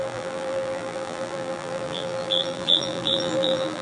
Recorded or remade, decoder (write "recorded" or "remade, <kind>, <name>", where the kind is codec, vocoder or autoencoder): remade, vocoder, BigVGAN v2